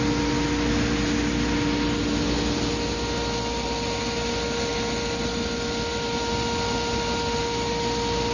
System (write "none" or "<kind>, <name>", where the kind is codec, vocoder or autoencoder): none